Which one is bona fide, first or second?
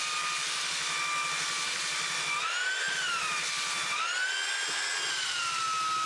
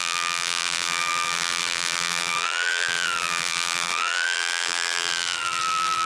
first